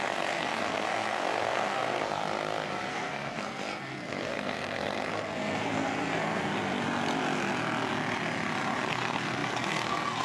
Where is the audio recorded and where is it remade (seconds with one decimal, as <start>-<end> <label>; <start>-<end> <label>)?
0.0-2.2 remade; 2.2-2.9 recorded; 2.9-6.5 remade; 6.5-8.9 recorded; 8.9-10.2 remade